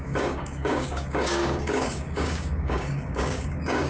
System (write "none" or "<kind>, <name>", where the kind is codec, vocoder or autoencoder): codec, DAC